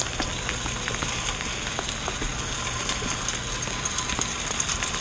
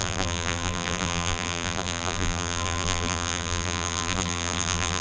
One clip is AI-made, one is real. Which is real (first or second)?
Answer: first